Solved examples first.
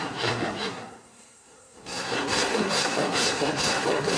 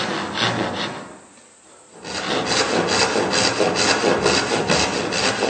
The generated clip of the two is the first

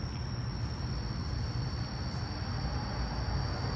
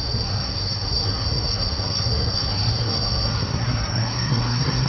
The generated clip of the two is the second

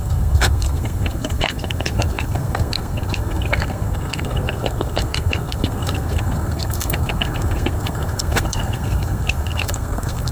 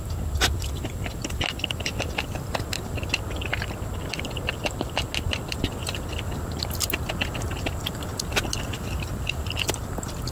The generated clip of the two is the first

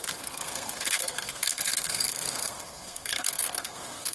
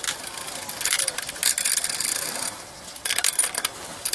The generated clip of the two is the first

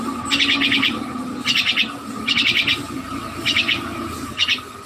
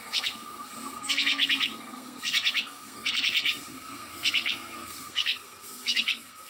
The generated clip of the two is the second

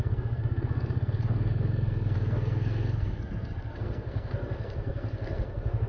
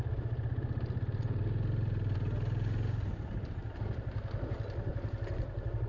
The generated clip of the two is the first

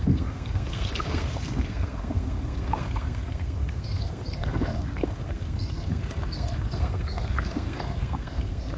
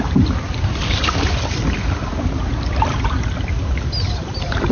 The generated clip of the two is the first